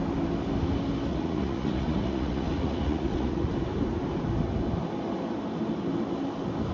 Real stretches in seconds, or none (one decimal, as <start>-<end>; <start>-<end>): 0.0-1.1; 3.5-6.7